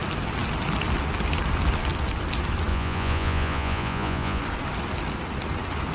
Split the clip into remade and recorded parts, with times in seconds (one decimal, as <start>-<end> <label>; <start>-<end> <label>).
0.0-2.7 recorded; 2.7-4.4 remade; 4.4-5.9 recorded